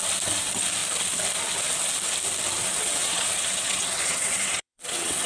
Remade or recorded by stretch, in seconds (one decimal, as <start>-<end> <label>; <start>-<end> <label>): 0.0-2.6 recorded; 2.6-5.3 remade